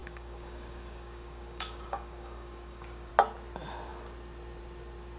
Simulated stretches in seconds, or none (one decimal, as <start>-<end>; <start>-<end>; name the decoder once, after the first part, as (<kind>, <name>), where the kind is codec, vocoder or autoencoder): 0.0-3.1 (codec, DAC)